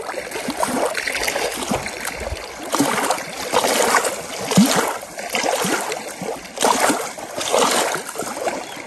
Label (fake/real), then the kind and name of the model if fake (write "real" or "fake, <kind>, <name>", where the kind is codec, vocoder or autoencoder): real